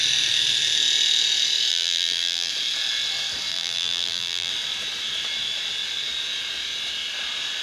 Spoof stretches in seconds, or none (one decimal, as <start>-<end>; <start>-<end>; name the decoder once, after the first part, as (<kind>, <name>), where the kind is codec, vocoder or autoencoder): 1.7-2.5 (vocoder, BigVGAN v2); 3.5-4.5